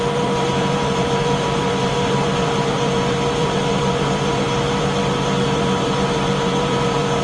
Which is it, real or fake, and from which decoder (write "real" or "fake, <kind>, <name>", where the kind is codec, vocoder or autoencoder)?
fake, vocoder, BigVGAN v2